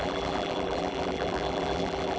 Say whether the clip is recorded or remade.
remade